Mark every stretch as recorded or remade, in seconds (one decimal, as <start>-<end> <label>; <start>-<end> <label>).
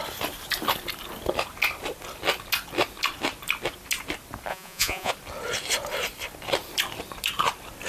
0.0-4.5 recorded; 4.5-5.1 remade; 5.1-7.9 recorded